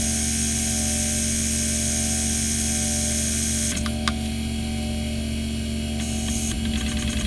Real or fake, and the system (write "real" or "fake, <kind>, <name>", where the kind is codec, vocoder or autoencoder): real